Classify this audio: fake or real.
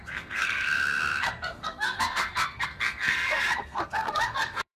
fake